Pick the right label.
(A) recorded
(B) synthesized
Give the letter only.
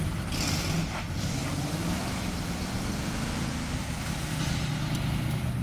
A